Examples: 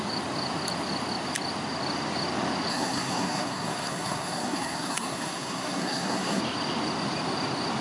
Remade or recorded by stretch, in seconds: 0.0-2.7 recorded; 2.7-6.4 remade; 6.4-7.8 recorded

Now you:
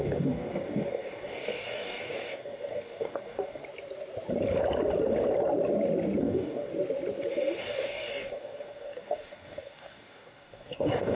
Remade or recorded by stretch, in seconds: 0.0-3.6 remade; 3.6-6.2 recorded; 6.2-6.7 remade; 6.7-7.6 recorded; 7.6-11.1 remade

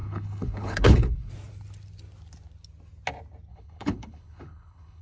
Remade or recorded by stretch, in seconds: 0.0-1.3 remade; 1.3-3.5 recorded; 3.5-5.0 remade

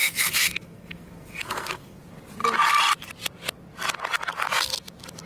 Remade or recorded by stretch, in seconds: 0.0-2.0 remade; 2.0-5.3 recorded